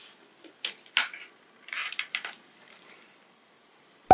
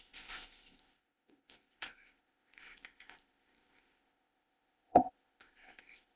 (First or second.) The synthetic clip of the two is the second